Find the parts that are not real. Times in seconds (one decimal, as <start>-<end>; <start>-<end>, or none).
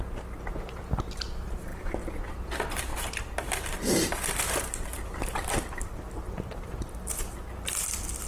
1.7-2.3; 2.9-6.1